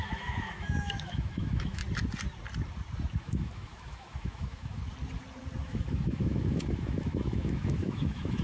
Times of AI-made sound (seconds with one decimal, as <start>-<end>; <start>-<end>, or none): 0.0-1.8; 3.2-4.8; 5.6-8.4